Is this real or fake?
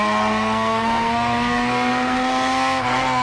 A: fake